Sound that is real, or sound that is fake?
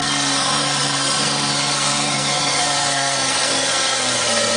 fake